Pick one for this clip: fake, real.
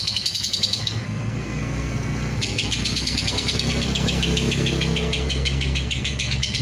fake